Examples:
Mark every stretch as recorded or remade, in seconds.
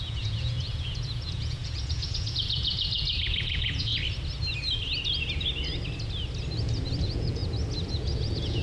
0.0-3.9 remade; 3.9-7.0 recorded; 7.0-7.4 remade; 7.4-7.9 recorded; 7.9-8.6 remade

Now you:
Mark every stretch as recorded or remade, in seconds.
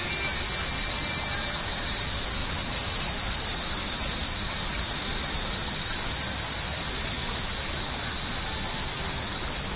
0.0-0.7 recorded; 0.7-1.2 remade; 1.2-2.4 recorded; 2.4-5.5 remade; 5.5-5.9 recorded; 5.9-7.1 remade; 7.1-9.8 recorded